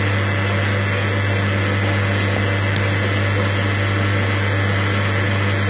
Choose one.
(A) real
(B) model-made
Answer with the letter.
A